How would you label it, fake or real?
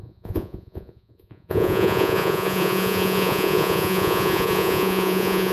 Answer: fake